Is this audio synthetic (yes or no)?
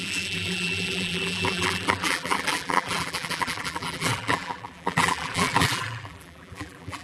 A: yes